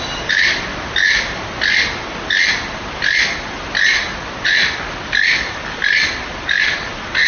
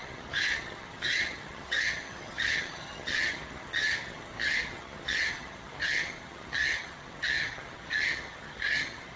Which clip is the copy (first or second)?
second